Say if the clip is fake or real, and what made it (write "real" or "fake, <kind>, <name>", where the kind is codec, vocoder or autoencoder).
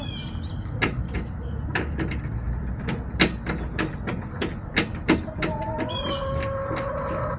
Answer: real